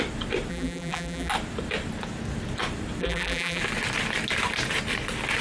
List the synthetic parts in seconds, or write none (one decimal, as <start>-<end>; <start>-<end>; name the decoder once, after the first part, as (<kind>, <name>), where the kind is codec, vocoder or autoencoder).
0.5-1.3 (vocoder, BigVGAN v2); 3.0-3.6